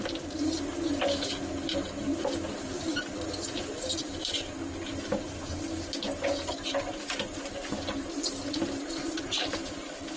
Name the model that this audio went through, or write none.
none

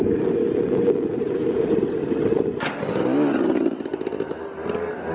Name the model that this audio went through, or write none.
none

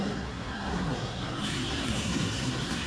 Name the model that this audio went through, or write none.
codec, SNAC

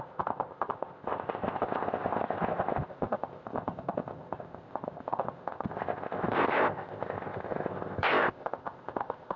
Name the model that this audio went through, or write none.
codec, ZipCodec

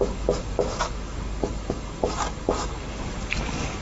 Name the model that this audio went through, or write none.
codec, DAC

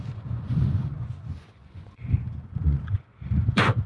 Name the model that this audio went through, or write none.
vocoder, Vocos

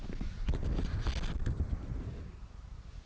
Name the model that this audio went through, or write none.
none